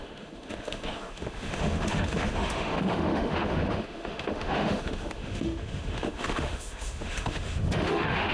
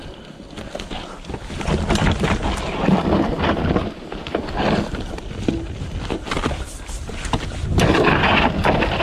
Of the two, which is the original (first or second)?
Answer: second